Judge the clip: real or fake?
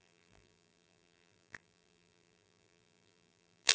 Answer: fake